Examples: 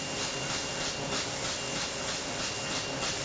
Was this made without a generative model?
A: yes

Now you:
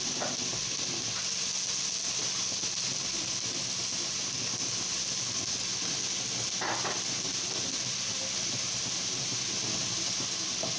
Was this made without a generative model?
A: yes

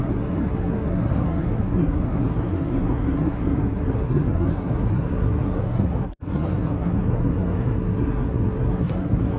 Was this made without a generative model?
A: no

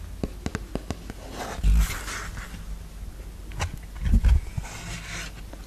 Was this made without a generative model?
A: yes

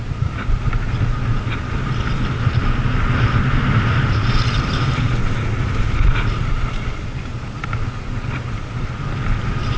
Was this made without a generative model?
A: yes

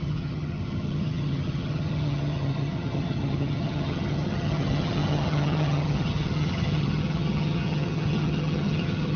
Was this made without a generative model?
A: no